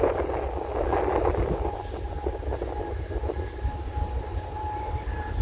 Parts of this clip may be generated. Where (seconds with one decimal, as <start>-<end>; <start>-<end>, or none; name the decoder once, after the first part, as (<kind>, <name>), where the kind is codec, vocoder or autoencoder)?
4.3-5.4 (vocoder, BigVGAN v2)